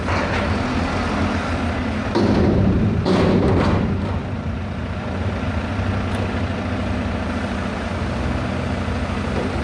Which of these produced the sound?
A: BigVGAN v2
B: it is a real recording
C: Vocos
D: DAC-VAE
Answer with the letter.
B